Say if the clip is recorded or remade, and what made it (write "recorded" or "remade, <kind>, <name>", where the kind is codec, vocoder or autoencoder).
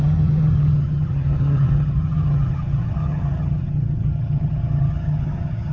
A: remade, vocoder, HiFi-GAN